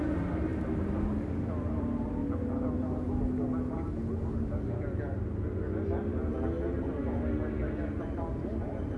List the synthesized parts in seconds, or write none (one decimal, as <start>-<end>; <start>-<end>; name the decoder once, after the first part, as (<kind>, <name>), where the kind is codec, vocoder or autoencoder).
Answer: none